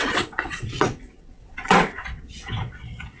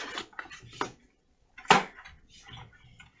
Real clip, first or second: second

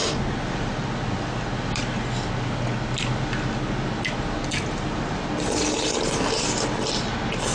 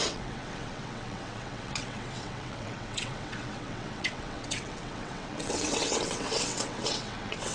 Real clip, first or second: first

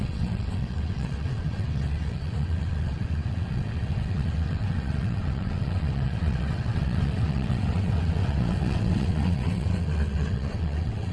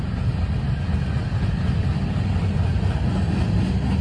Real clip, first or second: second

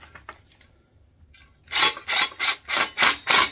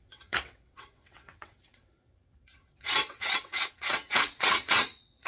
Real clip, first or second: first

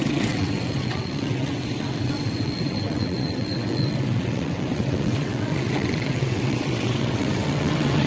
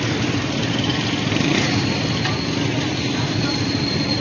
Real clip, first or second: second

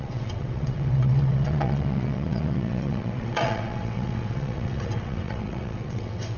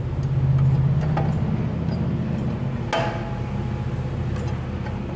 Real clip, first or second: second